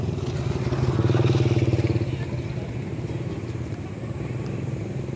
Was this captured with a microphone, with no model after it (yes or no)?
yes